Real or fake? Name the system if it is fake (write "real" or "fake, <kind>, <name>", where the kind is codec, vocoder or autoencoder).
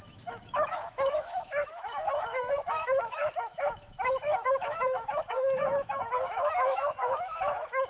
fake, autoencoder, DAC-VAE